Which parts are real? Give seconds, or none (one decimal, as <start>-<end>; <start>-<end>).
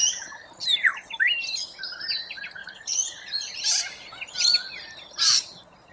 0.0-2.6; 3.6-5.9